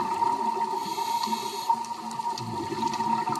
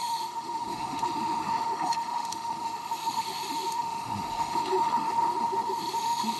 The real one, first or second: first